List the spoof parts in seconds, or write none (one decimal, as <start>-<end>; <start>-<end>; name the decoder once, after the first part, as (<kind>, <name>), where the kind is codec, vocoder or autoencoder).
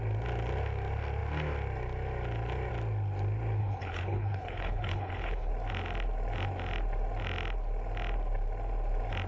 3.6-5.5 (codec, HILCodec)